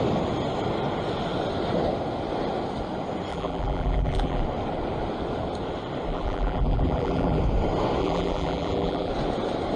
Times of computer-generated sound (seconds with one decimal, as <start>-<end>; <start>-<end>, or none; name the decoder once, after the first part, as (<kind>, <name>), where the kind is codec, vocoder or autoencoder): 3.3-4.4 (vocoder, BigVGAN v2); 6.1-7.4; 8.0-9.1